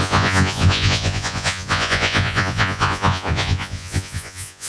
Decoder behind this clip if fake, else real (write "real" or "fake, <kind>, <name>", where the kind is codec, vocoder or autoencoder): fake, vocoder, Vocos